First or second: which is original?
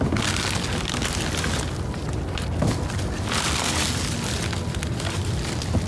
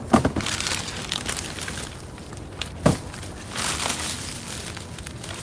first